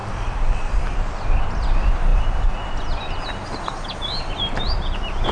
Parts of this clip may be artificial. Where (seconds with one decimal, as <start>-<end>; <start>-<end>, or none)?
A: 0.0-0.9